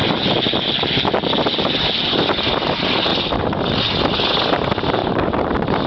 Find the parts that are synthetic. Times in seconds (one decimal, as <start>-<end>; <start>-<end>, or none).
3.1-3.8; 5.0-5.9